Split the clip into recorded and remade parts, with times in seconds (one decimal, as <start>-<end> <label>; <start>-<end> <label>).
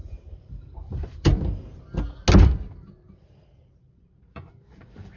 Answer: 0.0-1.3 remade; 1.3-2.4 recorded; 2.4-5.2 remade